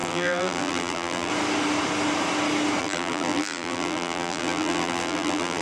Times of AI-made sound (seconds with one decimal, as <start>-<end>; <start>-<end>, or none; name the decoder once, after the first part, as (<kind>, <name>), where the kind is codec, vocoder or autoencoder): 0.0-1.3 (vocoder, BigVGAN v2); 2.8-5.6